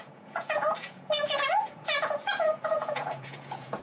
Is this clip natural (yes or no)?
no